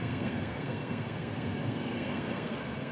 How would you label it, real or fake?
fake